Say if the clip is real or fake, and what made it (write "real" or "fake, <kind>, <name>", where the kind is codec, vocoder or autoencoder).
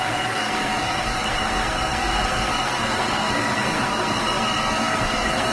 fake, codec, SNAC